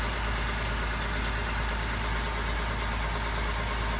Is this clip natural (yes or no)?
yes